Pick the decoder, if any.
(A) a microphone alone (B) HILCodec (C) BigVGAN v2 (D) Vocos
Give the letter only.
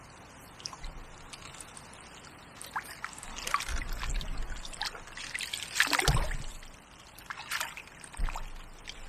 A